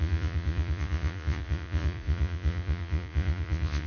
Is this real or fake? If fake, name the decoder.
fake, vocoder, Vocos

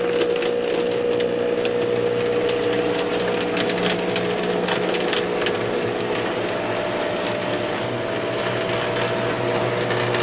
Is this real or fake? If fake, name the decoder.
real